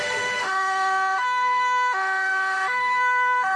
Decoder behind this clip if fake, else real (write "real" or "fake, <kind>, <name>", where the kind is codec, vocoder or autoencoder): fake, autoencoder, DAC-VAE